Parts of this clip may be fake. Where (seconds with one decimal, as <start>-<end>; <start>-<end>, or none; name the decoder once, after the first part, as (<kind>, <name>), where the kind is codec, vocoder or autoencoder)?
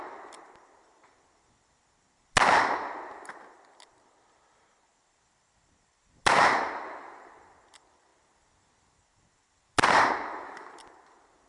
none